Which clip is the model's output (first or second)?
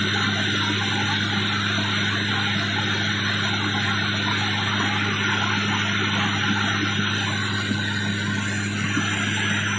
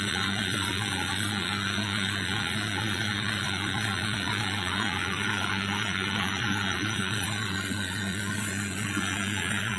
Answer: second